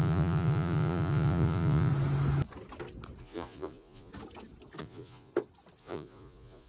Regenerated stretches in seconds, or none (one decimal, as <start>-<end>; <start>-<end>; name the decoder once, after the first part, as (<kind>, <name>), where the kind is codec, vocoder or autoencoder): 0.0-1.9 (vocoder, Vocos); 3.2-4.1; 4.8-5.3; 5.8-6.7